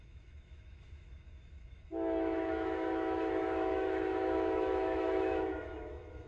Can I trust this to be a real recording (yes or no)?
no